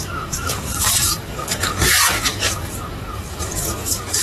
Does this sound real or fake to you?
fake